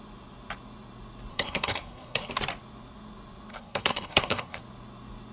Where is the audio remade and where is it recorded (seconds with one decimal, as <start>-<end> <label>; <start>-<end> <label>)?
0.0-1.3 recorded; 1.3-2.3 remade; 2.3-3.5 recorded; 3.5-4.6 remade; 4.6-5.3 recorded